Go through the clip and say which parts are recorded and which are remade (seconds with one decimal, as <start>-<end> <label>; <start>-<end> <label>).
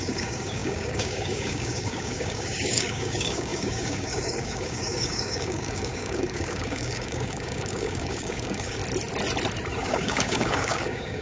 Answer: 0.0-8.8 remade; 8.8-9.8 recorded; 9.8-11.2 remade